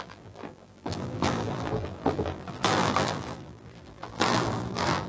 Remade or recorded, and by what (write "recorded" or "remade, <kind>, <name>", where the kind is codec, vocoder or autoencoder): remade, vocoder, BigVGAN v2